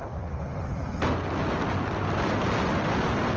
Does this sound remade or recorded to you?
recorded